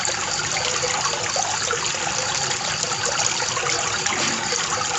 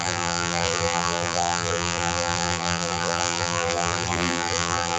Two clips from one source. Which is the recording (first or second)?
first